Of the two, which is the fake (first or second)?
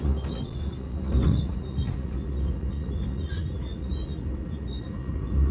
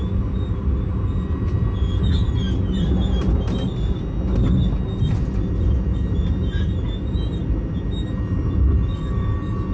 first